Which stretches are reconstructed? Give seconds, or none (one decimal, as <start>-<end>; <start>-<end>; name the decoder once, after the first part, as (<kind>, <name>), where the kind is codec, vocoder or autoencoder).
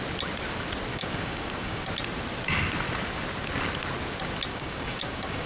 0.9-1.8 (codec, DAC); 4.5-5.5